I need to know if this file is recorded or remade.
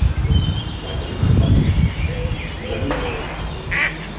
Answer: recorded